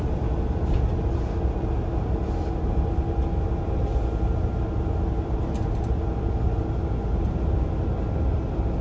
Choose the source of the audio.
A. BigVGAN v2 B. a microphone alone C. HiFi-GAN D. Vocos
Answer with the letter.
B